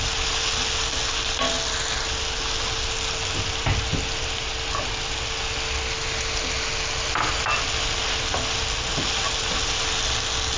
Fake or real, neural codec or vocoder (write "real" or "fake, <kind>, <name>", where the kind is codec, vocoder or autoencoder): real